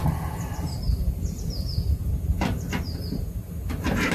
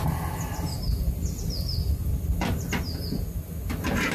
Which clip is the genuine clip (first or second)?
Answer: second